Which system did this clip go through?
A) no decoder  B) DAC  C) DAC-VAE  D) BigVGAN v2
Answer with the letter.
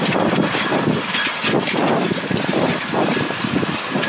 A